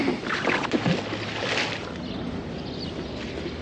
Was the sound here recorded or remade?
recorded